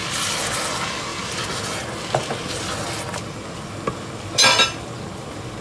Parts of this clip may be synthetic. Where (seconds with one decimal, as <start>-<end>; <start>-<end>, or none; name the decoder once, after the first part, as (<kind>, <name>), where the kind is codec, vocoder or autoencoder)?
none